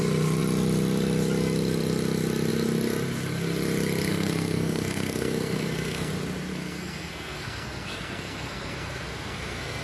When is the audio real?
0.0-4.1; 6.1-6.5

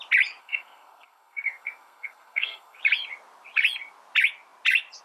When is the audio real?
0.0-0.4; 2.8-5.0

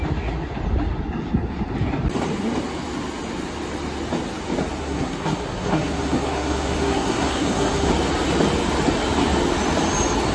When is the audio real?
0.0-4.8; 7.9-10.3

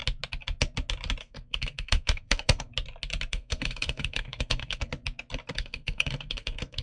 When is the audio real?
0.0-1.2; 2.7-3.3; 4.9-5.5

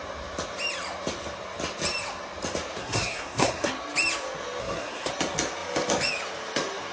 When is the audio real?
0.0-2.8; 3.7-4.6; 5.1-6.9

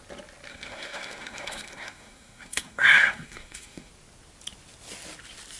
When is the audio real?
0.0-0.5; 3.9-5.6

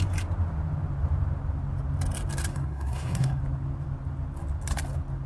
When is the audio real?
0.0-2.5; 3.4-5.3

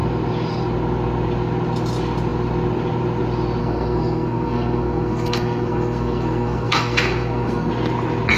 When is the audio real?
0.0-3.6; 7.7-8.4